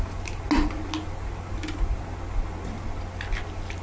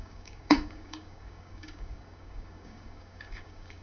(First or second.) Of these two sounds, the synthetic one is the second